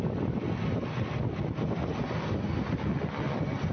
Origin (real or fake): real